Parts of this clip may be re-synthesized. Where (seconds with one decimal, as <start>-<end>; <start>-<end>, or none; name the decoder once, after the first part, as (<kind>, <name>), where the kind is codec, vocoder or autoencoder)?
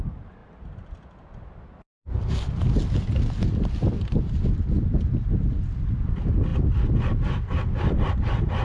none